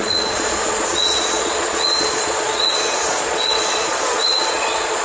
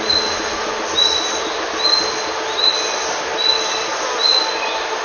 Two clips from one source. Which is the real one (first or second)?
second